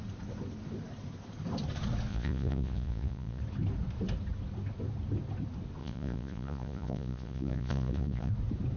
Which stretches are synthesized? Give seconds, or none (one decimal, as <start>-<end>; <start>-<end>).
2.1-3.4; 5.8-8.3